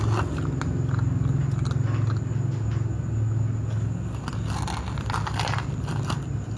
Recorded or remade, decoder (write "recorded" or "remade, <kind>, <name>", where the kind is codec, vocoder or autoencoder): recorded